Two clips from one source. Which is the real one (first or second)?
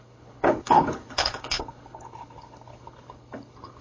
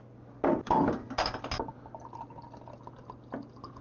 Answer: second